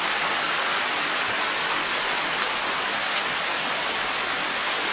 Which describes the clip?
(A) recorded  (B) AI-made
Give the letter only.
A